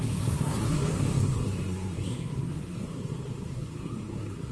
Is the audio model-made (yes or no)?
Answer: yes